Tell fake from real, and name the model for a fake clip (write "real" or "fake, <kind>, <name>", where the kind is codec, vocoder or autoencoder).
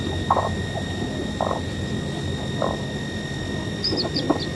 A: real